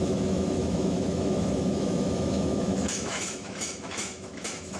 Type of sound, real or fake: fake